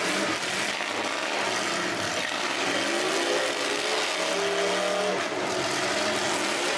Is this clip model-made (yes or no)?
no